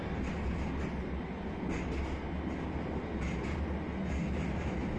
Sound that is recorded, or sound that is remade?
recorded